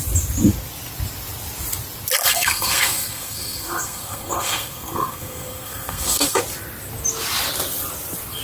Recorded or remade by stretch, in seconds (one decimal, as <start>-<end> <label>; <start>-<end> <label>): 0.0-2.2 recorded; 2.2-6.4 remade; 6.4-8.4 recorded